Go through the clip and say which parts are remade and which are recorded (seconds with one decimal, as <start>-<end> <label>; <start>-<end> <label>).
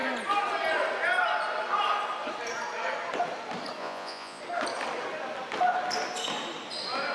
0.0-3.8 recorded; 3.8-4.4 remade; 4.4-7.1 recorded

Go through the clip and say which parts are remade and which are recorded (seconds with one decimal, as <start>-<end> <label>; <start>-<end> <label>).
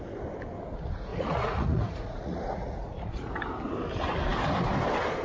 0.0-1.1 recorded; 1.1-3.4 remade; 3.4-5.2 recorded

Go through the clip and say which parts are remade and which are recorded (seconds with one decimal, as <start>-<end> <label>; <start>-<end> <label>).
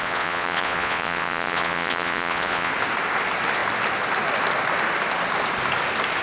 0.0-2.7 remade; 2.7-6.2 recorded